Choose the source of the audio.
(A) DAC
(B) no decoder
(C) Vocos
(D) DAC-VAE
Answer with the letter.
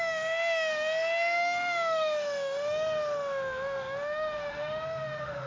D